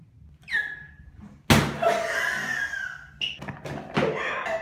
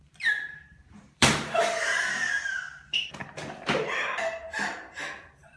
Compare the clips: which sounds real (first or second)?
first